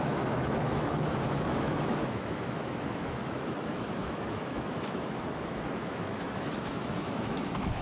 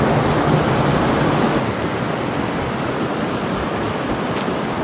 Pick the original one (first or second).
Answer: second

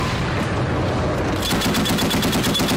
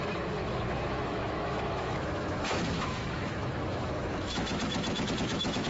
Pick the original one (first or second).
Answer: first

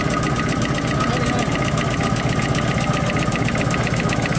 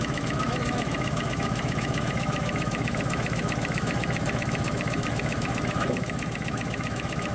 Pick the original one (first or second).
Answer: first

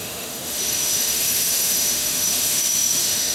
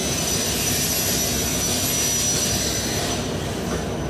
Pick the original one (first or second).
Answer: second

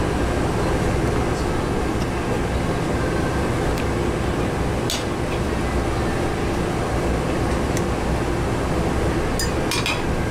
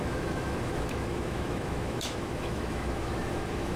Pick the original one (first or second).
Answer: first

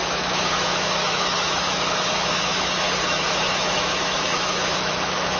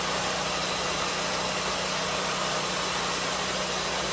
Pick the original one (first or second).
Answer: second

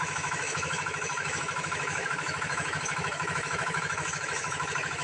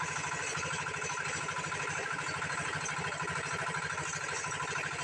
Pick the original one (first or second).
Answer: second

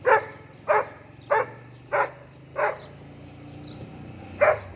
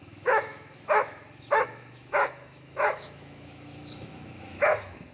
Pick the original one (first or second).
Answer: first